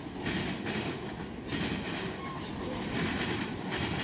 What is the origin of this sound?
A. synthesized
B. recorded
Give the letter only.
B